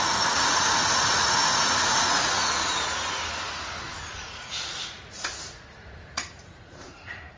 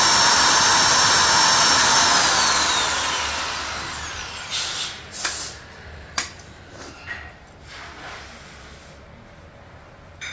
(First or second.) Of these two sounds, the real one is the second